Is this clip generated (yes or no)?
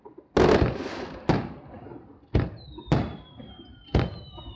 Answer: no